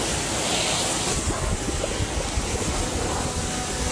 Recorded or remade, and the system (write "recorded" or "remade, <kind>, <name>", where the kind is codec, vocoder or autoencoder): recorded